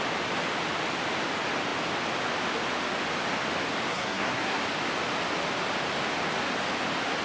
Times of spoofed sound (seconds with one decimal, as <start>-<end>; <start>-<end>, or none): 3.9-4.6